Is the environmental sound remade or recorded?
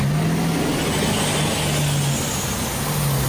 recorded